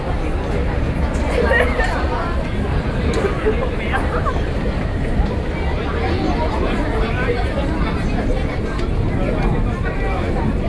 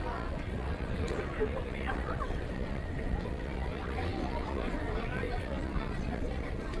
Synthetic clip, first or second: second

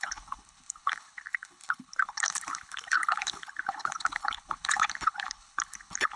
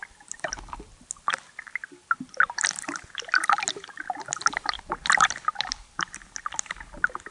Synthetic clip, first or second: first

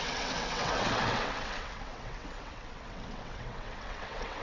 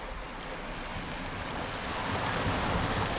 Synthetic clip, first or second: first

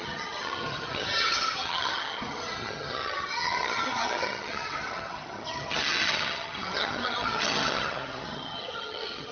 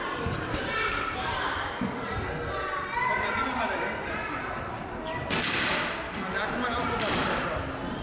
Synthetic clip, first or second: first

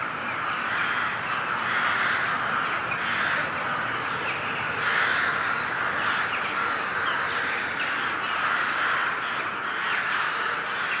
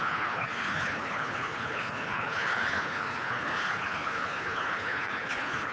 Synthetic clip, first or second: second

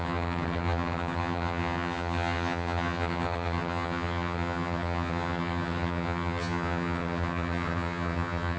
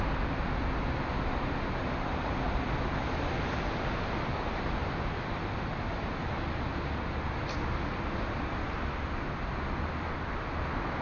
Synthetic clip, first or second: first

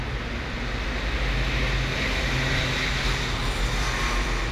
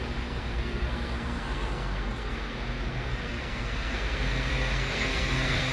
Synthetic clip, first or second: second